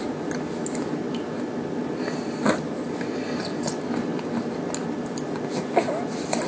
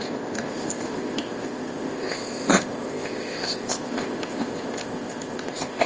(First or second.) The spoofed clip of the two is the second